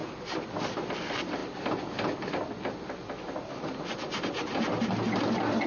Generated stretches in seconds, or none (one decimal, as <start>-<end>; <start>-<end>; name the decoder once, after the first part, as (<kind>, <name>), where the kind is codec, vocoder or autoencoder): none